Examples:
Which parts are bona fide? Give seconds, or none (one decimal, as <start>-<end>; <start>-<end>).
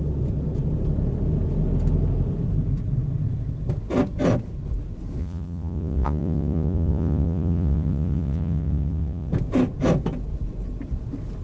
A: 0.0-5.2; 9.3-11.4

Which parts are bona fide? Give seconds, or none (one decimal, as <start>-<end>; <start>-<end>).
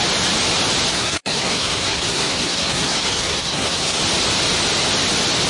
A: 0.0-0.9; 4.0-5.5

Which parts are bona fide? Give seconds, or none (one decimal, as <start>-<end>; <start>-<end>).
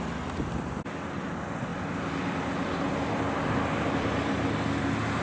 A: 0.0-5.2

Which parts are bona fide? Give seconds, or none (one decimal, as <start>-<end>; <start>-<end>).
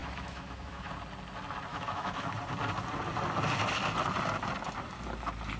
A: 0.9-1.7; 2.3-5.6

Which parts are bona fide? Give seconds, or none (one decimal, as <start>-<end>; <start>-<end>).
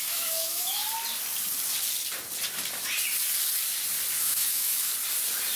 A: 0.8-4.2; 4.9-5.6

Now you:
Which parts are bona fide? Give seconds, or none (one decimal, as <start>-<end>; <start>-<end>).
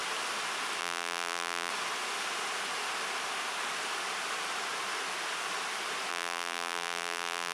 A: 0.0-0.8; 1.7-6.1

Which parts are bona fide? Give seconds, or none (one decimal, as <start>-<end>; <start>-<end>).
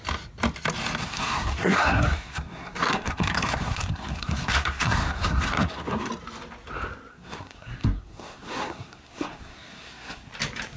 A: 0.0-1.0; 6.1-7.1; 10.3-10.8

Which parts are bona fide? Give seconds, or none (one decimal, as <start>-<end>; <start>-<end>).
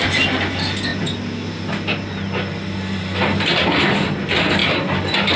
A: 0.0-5.4